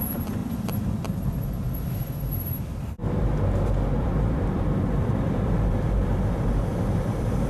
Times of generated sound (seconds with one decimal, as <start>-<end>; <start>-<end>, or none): 0.0-3.0; 4.0-7.5